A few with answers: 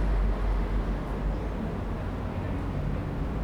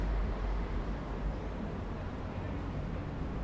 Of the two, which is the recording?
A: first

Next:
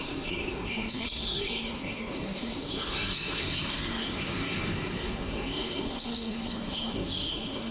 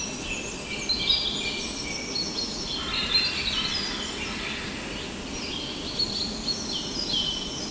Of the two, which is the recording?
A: second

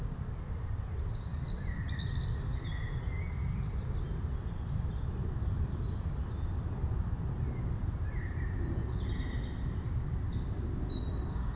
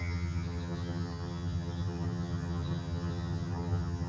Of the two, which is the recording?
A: first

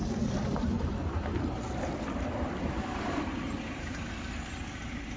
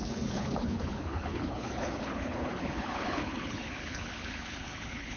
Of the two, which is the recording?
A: first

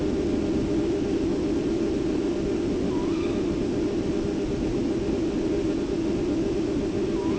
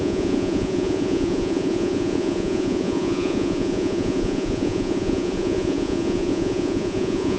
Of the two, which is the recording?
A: first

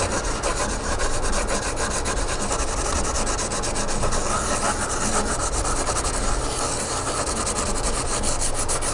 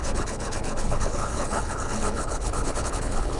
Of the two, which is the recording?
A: first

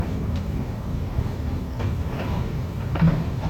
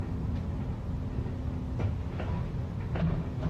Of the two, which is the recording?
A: second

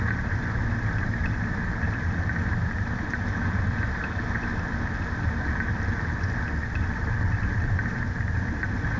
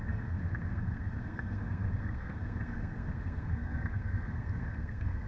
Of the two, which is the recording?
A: first